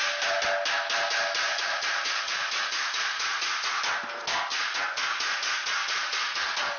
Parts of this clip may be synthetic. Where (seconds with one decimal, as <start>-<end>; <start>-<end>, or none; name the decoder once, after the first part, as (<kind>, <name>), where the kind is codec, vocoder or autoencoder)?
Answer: 1.5-3.8 (vocoder, Vocos); 4.5-6.8